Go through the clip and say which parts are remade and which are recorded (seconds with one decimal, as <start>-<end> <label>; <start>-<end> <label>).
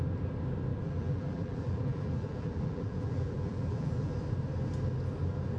0.0-0.7 recorded; 0.7-4.1 remade; 4.1-5.6 recorded